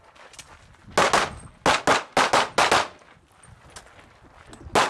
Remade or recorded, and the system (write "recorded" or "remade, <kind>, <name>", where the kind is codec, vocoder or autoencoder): recorded